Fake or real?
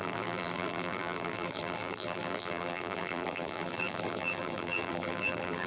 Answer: fake